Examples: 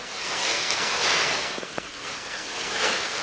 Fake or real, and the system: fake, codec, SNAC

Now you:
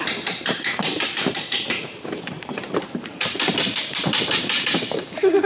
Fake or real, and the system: fake, vocoder, BigVGAN v2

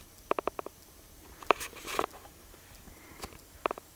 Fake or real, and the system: fake, vocoder, BigVGAN v2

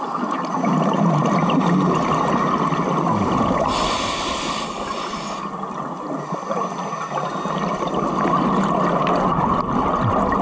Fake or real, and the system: real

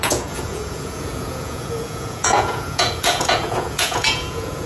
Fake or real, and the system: fake, vocoder, Vocos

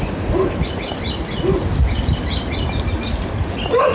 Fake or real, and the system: real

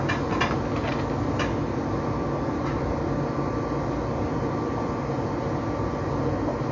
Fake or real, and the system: real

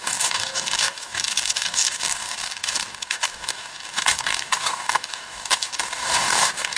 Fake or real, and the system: fake, codec, DAC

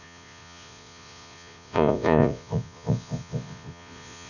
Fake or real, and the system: fake, vocoder, Vocos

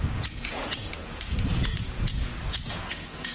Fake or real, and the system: fake, vocoder, Vocos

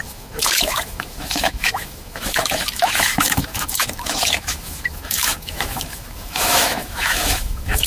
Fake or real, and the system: fake, autoencoder, DAC-VAE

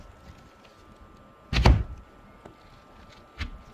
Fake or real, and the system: real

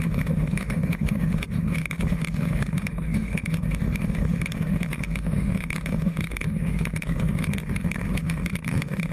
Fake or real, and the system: fake, autoencoder, DAC-VAE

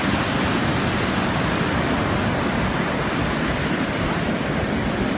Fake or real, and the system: real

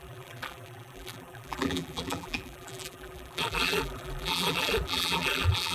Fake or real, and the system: fake, vocoder, BigVGAN v2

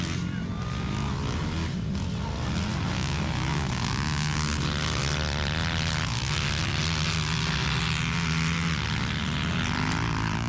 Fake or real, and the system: real